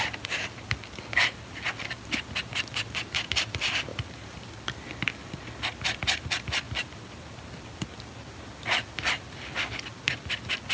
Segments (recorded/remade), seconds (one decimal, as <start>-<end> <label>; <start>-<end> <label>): 0.0-3.9 recorded; 3.9-4.4 remade; 4.4-10.7 recorded